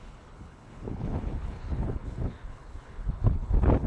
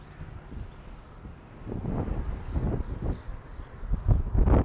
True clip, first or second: second